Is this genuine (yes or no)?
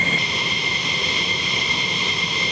yes